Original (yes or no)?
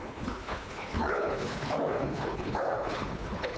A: no